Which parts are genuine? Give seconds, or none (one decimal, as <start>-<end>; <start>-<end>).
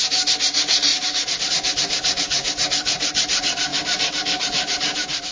0.0-0.9; 1.5-3.7